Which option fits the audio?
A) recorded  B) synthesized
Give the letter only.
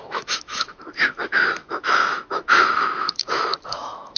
B